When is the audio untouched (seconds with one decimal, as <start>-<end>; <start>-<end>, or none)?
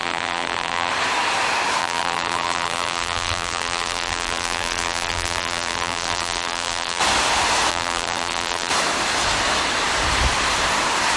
0.9-1.8; 7.0-7.7; 8.7-11.2